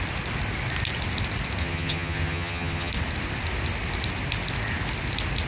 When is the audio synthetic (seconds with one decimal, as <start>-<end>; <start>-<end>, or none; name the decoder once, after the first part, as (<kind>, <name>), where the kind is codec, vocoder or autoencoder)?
1.6-2.9 (vocoder, HiFi-GAN)